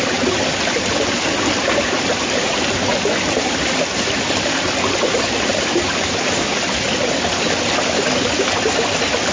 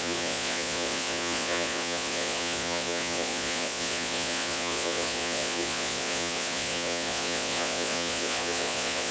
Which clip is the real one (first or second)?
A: first